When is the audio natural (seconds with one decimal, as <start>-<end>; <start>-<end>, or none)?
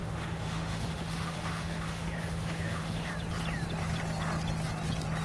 3.1-5.2